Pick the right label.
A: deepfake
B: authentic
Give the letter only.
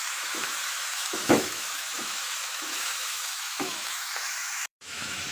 A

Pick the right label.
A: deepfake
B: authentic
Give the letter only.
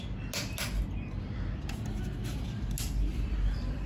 B